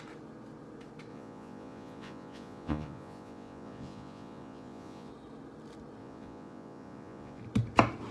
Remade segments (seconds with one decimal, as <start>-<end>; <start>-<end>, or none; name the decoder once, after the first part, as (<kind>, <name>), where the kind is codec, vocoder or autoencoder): 1.1-5.1 (vocoder, Vocos); 6.0-7.4

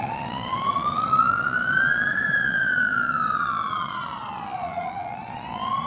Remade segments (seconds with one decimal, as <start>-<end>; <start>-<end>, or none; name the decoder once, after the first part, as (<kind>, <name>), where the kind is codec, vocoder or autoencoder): 0.0-5.9 (vocoder, Vocos)

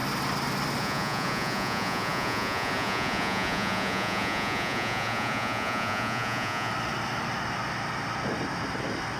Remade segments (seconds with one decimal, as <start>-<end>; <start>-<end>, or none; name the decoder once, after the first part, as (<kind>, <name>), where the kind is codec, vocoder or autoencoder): 0.8-6.7 (vocoder, Vocos)